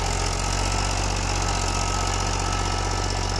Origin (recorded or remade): recorded